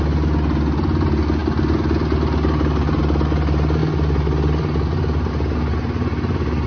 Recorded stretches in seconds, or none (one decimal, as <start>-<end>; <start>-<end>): 0.0-6.7